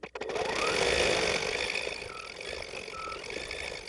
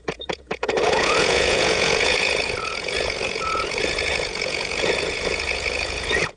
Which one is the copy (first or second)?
second